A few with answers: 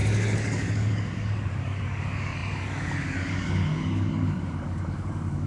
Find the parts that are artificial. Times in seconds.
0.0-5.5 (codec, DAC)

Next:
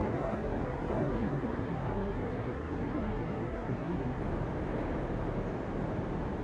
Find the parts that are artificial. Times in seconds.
0.0-4.2 (codec, SNAC)

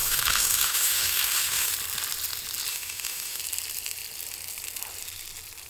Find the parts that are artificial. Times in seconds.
0.0-1.7 (autoencoder, DAC-VAE); 2.7-3.4